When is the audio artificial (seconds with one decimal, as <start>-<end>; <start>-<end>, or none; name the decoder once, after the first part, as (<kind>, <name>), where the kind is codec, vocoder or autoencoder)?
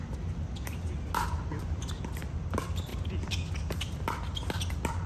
2.9-3.7 (vocoder, BigVGAN v2)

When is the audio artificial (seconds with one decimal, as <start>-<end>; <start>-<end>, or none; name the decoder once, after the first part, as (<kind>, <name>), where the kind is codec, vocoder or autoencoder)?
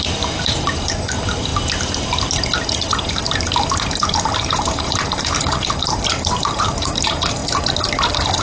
0.0-1.5 (vocoder, BigVGAN v2); 4.3-7.4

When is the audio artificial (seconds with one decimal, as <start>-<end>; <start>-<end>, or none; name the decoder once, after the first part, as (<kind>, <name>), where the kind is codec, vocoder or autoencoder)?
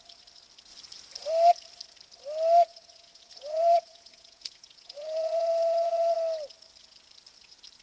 2.7-6.2 (vocoder, Vocos)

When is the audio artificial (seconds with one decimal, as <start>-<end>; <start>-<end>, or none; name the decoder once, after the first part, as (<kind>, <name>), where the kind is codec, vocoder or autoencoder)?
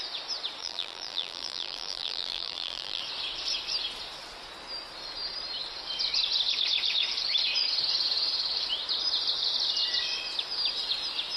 0.6-3.0 (vocoder, BigVGAN v2)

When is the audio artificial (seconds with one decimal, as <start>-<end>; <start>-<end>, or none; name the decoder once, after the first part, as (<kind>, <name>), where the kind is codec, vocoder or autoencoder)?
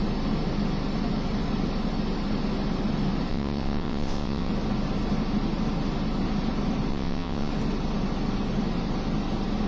3.3-4.5 (vocoder, WaveNeXt); 6.9-7.5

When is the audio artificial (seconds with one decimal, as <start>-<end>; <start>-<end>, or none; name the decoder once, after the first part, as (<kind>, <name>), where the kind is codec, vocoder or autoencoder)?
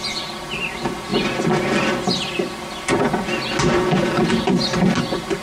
none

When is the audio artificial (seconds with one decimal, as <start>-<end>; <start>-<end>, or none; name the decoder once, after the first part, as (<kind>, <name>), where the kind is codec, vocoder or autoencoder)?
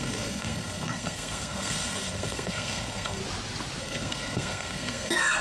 0.0-3.2 (codec, SNAC); 3.8-5.4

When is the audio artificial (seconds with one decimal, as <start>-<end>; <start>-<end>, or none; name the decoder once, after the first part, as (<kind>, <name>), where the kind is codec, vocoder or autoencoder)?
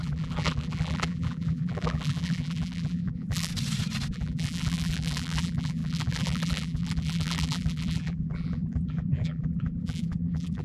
0.0-3.5 (vocoder, BigVGAN v2); 4.1-10.6